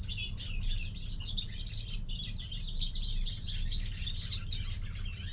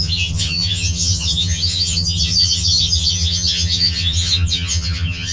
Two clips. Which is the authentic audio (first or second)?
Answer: first